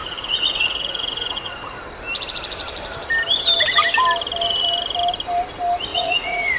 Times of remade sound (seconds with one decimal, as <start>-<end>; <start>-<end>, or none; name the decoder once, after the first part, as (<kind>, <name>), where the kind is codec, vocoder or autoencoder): 0.0-1.8 (vocoder, Vocos); 5.9-6.6